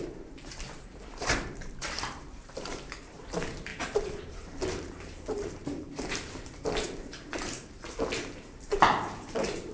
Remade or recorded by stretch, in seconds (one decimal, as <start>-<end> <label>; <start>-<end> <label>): 0.0-9.7 remade